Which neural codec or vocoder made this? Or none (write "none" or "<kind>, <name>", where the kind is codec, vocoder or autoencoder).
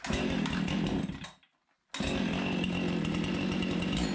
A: none